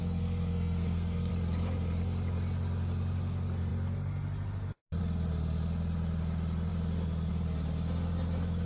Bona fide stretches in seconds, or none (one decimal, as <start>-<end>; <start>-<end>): 1.3-8.7